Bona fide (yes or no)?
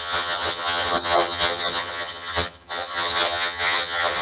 no